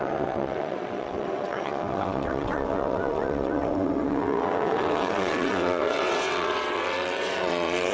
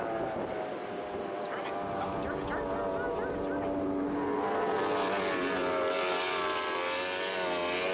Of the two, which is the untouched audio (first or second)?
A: second